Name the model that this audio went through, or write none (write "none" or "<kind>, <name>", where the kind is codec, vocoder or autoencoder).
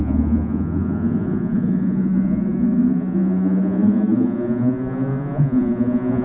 vocoder, Vocos